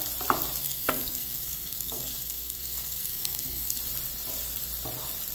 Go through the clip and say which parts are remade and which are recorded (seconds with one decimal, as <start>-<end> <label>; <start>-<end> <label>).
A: 0.0-0.6 recorded; 0.6-3.8 remade; 3.8-5.3 recorded